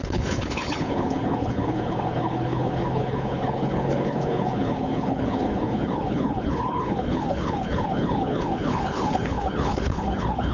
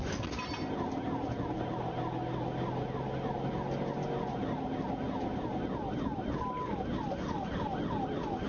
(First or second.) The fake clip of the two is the first